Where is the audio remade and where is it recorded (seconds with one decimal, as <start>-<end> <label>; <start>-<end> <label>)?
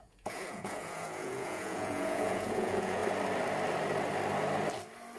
0.0-3.0 remade; 3.0-5.2 recorded